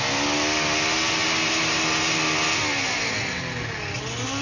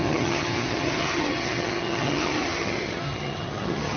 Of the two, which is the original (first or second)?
first